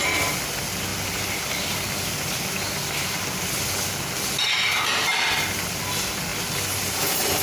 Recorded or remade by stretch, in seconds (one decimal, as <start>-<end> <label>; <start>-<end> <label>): 0.0-7.4 recorded